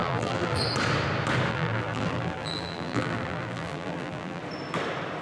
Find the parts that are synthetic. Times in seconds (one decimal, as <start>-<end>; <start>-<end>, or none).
0.0-0.6; 1.5-4.4